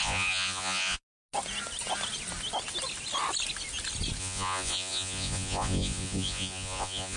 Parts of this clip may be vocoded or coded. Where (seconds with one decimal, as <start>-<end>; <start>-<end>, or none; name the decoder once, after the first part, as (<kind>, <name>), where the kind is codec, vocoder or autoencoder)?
0.0-1.0 (vocoder, Vocos); 4.2-7.2